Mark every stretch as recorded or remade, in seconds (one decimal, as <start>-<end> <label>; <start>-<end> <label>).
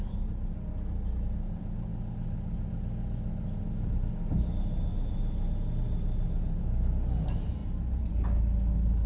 0.0-9.1 recorded